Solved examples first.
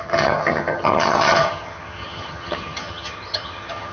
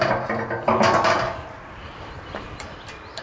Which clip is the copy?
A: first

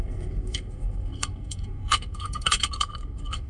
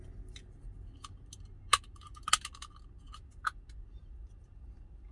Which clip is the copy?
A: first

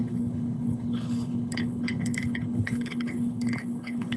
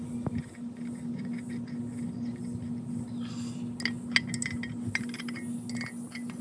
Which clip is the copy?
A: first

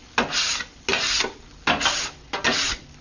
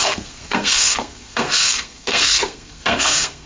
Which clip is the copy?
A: second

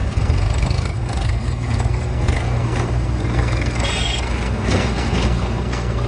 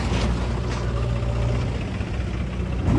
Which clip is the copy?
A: first